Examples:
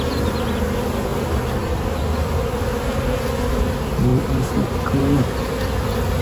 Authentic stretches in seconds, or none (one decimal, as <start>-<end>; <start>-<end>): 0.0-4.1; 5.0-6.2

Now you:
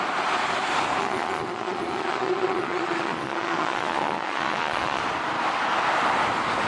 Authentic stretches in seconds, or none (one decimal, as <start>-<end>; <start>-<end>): 0.0-1.0; 5.0-6.7

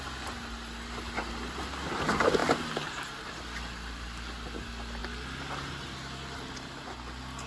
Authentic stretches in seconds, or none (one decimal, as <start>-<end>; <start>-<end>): 0.0-7.5